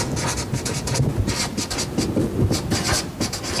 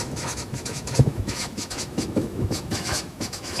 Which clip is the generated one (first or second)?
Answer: second